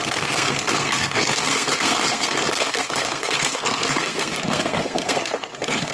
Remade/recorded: remade